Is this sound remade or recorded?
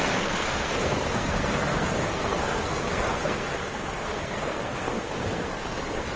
remade